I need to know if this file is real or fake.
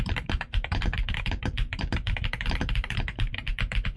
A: fake